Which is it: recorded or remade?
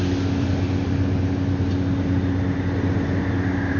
recorded